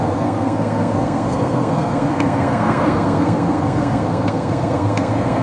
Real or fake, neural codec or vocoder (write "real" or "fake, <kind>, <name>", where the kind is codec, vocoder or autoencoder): fake, codec, SNAC